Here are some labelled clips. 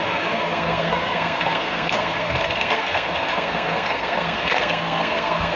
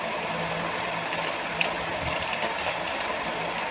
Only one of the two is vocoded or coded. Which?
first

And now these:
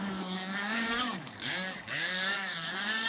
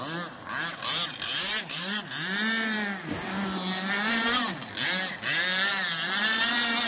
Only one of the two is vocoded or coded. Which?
first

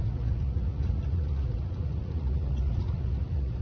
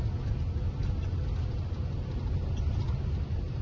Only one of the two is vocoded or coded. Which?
first